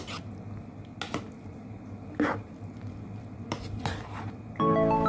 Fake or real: real